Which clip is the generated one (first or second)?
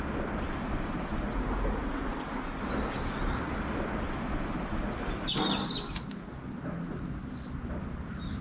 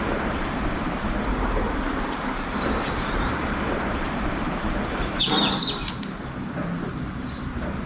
second